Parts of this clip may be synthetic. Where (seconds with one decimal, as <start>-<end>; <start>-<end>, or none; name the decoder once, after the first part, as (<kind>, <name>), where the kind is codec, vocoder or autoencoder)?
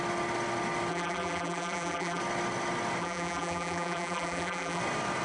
0.9-2.2 (vocoder, BigVGAN v2); 3.0-4.8